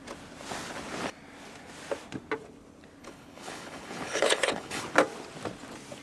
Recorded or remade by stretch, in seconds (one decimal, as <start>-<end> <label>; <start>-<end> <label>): 0.0-3.0 recorded; 3.0-4.8 remade; 4.8-6.0 recorded